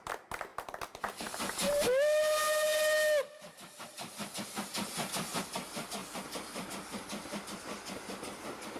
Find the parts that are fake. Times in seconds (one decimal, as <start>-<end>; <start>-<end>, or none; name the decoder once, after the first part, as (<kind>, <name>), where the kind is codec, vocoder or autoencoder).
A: none